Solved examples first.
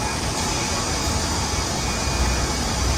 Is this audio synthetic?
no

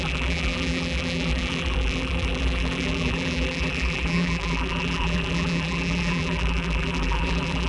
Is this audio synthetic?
yes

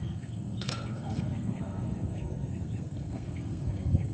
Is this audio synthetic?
yes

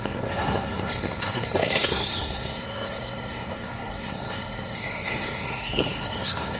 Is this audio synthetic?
yes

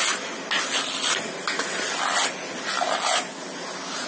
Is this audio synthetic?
no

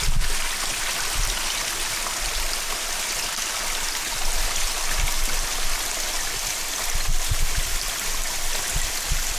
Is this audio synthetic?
no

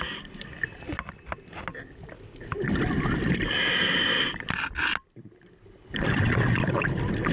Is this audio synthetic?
no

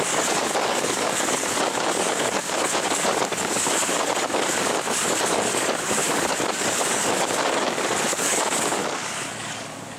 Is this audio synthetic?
yes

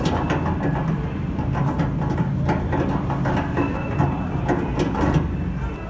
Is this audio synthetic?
no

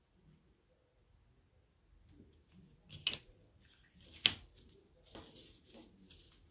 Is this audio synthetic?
no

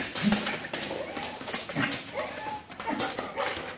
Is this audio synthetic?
no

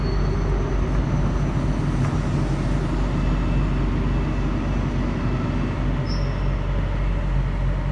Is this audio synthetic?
no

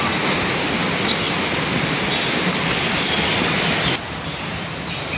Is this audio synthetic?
no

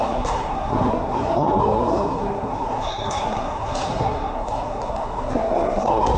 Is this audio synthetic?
yes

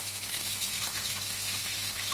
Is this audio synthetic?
yes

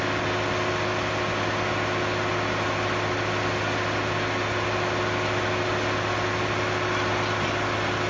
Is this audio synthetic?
no